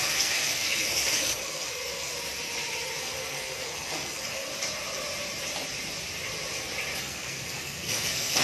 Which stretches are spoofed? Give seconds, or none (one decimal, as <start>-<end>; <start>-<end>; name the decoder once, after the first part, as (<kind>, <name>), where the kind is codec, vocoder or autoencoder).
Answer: 0.0-2.1 (codec, SNAC); 3.0-4.5; 7.0-8.4